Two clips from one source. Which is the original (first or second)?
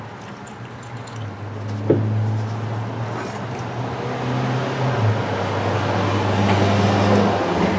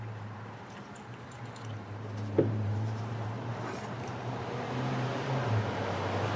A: first